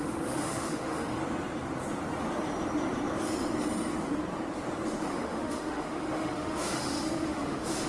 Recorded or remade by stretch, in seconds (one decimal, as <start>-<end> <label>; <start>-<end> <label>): 0.0-1.2 remade; 1.2-5.1 recorded; 5.1-7.9 remade